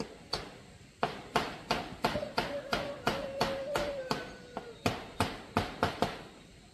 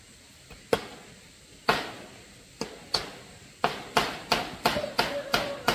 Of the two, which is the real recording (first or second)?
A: second